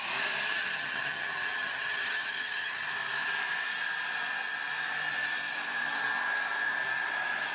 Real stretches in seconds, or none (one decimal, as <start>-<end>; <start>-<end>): 0.0-0.5; 2.8-7.5